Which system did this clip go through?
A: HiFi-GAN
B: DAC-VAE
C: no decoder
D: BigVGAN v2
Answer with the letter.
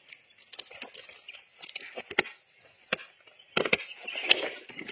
C